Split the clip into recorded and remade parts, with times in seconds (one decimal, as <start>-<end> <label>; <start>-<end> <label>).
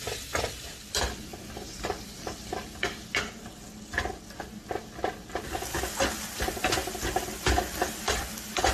0.0-8.7 recorded